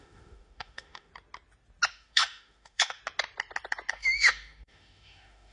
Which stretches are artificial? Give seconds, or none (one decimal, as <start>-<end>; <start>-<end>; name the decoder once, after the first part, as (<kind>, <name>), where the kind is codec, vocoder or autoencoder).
0.0-1.1 (autoencoder, DAC-VAE); 1.9-3.0; 3.9-5.5